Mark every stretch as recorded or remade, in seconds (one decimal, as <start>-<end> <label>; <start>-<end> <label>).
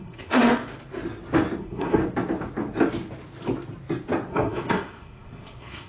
0.0-0.4 remade; 0.4-1.6 recorded; 1.6-2.0 remade; 2.0-4.3 recorded; 4.3-5.9 remade